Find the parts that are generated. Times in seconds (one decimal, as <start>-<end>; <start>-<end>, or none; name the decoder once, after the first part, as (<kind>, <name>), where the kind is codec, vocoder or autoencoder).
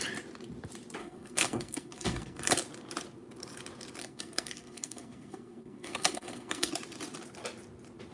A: 1.0-2.5 (codec, SNAC); 4.0-6.7